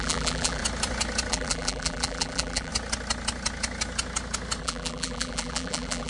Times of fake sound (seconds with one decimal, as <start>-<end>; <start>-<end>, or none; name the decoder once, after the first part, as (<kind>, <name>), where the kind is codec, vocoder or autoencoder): 0.0-0.6 (vocoder, BigVGAN v2); 1.3-2.7; 4.6-6.1